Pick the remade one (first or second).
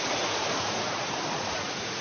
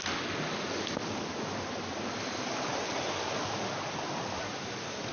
first